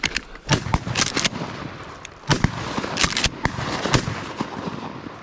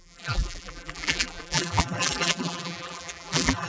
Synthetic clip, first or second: second